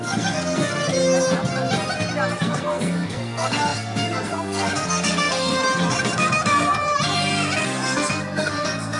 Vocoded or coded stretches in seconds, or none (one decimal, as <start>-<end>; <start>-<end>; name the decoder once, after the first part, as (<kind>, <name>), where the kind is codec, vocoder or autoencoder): 0.0-0.8 (codec, SNAC); 2.4-5.5; 7.6-9.0